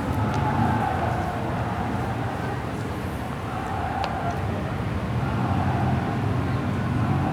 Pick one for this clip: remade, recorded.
recorded